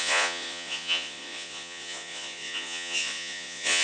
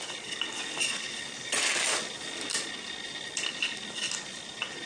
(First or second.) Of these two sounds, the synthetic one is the first